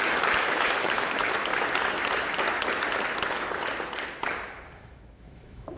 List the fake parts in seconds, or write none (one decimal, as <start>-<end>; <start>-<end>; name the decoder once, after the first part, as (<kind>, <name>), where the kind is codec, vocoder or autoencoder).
0.0-1.5 (autoencoder, DAC-VAE); 4.8-5.8